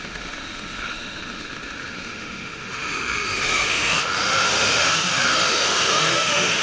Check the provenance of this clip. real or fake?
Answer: fake